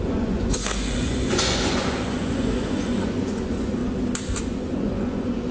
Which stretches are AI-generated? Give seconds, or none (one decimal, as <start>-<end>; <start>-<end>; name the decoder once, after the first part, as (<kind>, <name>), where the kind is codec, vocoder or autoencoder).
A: 0.0-3.8 (vocoder, Vocos); 4.4-5.5